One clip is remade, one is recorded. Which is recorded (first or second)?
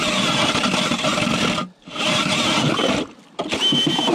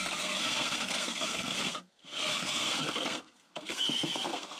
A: first